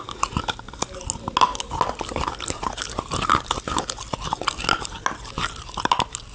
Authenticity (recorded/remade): recorded